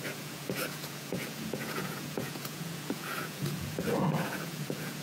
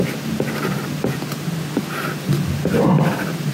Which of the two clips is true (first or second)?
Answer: second